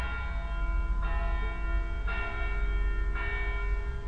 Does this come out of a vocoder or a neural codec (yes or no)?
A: no